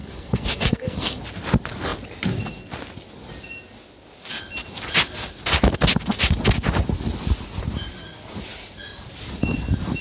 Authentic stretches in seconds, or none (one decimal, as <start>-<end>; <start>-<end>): 1.2-10.0

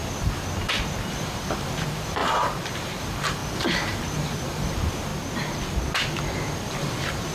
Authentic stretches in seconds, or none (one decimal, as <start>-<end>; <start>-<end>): 0.0-1.1; 5.1-6.7